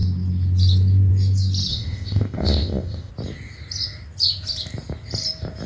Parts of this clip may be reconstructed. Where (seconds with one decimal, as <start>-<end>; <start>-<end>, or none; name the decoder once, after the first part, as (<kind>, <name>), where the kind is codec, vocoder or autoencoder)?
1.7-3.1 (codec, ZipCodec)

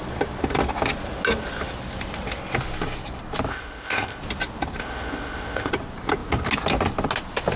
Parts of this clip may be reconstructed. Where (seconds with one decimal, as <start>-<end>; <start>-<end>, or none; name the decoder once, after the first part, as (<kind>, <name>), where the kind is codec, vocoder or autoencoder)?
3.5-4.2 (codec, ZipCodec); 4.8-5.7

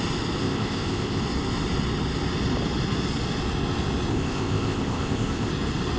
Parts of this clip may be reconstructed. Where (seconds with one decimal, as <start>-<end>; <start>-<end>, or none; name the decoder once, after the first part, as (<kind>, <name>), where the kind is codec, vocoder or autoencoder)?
0.4-1.2 (codec, ZipCodec); 4.1-5.5

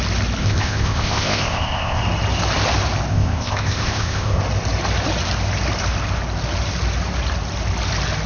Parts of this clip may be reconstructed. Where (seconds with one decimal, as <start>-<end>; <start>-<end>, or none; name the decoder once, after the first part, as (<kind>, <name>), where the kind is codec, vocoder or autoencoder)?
0.4-2.0 (codec, ZipCodec); 3.1-4.4

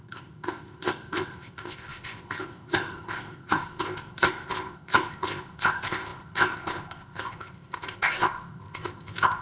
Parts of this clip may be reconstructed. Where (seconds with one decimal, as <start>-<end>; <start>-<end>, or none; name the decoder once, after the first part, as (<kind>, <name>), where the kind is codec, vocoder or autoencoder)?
0.0-9.4 (codec, ZipCodec)